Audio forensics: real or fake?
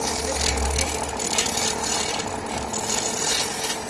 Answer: real